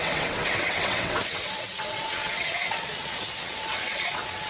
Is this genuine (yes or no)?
no